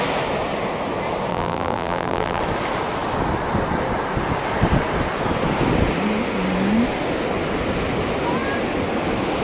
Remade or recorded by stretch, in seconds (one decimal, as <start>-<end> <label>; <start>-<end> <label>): 0.0-1.3 recorded; 1.3-2.4 remade; 2.4-9.4 recorded